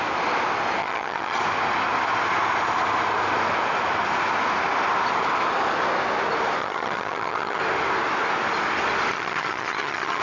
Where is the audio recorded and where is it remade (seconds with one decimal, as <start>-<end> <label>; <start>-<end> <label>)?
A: 0.0-0.8 recorded; 0.8-1.4 remade; 1.4-6.6 recorded; 6.6-7.6 remade; 7.6-9.1 recorded; 9.1-10.2 remade